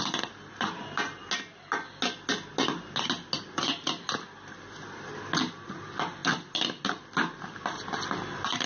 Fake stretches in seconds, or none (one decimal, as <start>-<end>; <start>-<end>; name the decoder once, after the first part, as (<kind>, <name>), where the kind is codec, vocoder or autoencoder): none